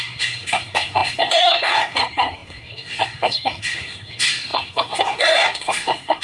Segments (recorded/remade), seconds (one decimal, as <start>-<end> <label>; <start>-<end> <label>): 0.0-6.2 remade